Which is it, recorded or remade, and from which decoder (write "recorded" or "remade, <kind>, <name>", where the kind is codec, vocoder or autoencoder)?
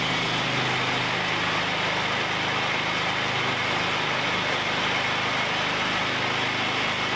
recorded